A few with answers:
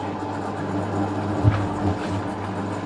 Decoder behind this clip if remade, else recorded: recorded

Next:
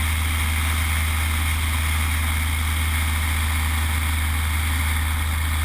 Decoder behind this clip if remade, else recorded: recorded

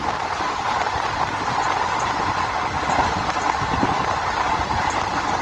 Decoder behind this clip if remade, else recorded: recorded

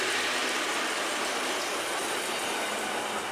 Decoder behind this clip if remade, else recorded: recorded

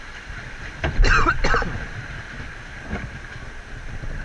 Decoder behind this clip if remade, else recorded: recorded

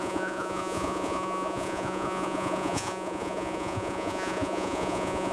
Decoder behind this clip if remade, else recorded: remade, vocoder, Vocos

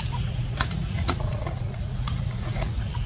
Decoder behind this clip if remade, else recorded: remade, vocoder, Vocos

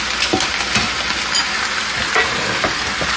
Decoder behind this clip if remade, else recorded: recorded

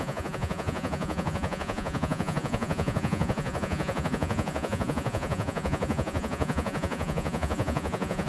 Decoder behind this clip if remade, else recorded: remade, vocoder, Vocos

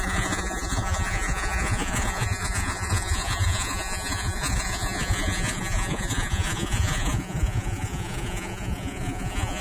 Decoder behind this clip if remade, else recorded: remade, vocoder, Vocos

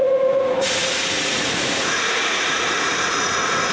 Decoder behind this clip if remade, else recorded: remade, vocoder, Vocos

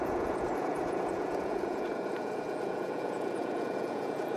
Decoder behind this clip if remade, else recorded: remade, vocoder, Vocos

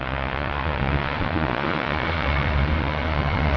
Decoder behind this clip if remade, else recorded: remade, vocoder, Vocos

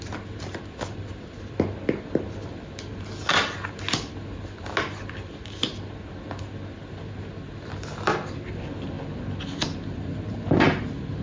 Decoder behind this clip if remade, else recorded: recorded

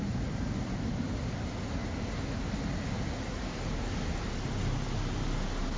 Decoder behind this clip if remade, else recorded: recorded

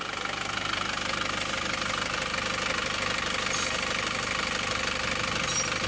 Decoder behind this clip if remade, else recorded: recorded